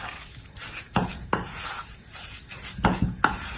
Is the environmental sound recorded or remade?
remade